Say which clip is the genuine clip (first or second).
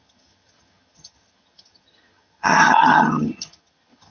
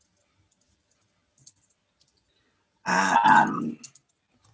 second